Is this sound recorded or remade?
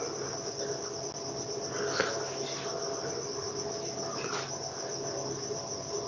recorded